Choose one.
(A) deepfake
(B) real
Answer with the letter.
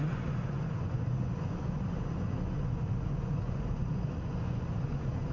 A